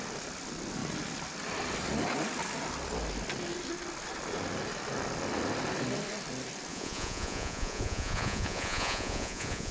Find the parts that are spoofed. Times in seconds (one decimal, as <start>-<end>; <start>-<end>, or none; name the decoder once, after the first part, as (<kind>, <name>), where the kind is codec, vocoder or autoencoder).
6.7-9.7 (vocoder, Vocos)